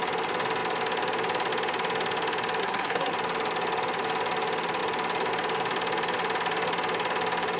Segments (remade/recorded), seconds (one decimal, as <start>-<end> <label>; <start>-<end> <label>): 0.0-2.6 recorded; 2.6-3.1 remade; 3.1-7.6 recorded